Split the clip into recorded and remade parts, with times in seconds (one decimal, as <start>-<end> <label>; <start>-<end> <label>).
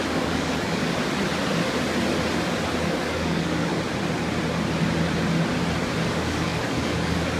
0.0-0.8 remade; 0.8-2.8 recorded; 2.8-3.7 remade; 3.7-6.1 recorded; 6.1-7.4 remade